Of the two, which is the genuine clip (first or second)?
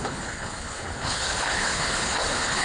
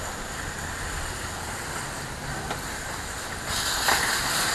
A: second